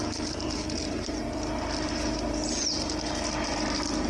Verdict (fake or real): real